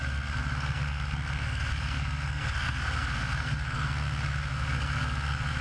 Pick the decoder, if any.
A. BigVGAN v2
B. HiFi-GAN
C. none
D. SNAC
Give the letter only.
D